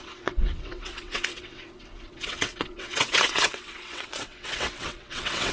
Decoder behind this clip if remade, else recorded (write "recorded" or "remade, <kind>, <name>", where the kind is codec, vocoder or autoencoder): remade, vocoder, WaveNeXt